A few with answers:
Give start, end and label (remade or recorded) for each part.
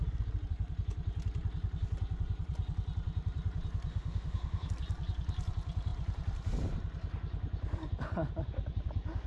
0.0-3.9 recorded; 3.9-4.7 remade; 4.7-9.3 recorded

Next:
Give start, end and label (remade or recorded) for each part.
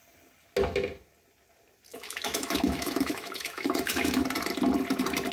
0.0-1.9 recorded; 1.9-4.2 remade; 4.2-5.3 recorded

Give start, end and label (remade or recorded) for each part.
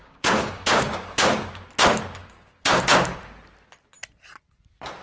0.0-1.7 remade; 1.7-2.2 recorded; 2.2-2.8 remade; 2.8-5.0 recorded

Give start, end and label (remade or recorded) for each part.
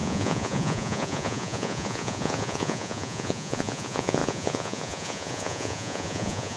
0.0-6.6 remade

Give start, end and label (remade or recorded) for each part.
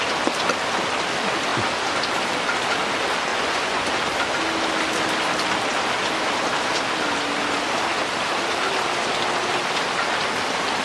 0.0-3.3 recorded; 3.3-3.9 remade; 3.9-10.8 recorded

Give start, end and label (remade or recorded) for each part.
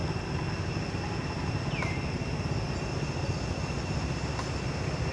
0.0-5.1 recorded